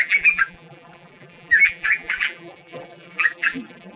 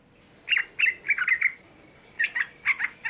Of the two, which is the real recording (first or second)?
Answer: second